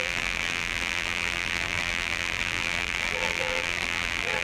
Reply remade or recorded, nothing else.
remade